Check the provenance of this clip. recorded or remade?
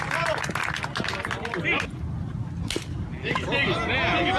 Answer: recorded